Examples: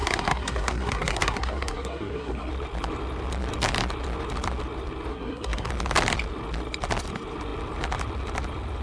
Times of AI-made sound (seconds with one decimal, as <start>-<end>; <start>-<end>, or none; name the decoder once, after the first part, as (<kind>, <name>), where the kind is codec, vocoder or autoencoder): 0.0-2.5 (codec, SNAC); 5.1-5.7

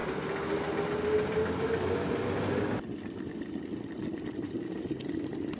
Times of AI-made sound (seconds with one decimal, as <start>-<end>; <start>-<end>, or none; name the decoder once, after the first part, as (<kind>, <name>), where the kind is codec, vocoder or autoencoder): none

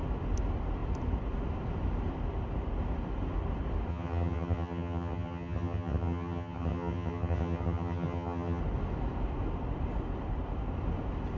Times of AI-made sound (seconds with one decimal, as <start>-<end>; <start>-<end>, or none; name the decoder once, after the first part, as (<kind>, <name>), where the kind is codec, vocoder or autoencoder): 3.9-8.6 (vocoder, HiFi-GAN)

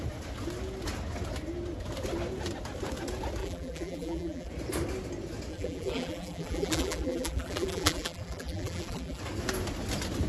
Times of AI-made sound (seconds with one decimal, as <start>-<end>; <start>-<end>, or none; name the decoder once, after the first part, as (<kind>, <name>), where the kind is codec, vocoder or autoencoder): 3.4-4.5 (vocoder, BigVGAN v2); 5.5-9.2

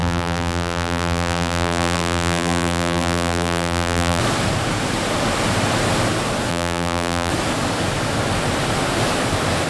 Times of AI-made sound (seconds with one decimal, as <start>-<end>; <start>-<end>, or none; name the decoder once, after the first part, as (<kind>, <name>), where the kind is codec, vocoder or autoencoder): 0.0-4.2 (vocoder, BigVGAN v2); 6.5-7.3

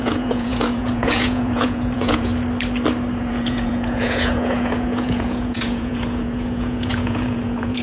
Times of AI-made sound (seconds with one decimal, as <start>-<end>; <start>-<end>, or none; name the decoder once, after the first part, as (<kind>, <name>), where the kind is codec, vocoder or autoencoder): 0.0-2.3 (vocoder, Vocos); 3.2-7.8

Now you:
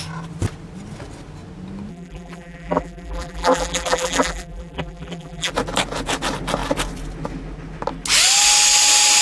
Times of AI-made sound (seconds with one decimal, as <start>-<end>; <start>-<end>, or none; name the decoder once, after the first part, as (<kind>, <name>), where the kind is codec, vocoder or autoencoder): 1.9-5.5 (vocoder, BigVGAN v2)